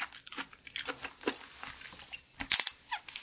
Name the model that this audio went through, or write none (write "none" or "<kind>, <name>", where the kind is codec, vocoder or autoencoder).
none